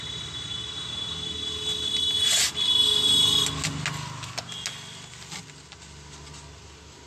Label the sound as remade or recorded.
recorded